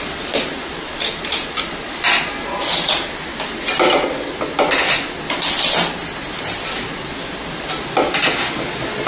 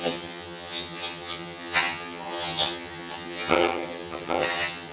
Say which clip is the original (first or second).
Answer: first